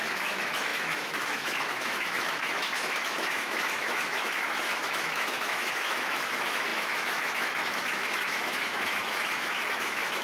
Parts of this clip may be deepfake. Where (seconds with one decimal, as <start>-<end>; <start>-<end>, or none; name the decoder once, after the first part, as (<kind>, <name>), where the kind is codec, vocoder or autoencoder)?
0.0-10.2 (autoencoder, DAC-VAE)